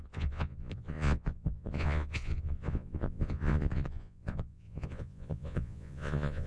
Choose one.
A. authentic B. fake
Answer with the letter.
B